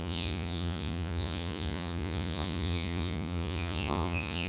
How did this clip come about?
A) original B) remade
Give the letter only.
B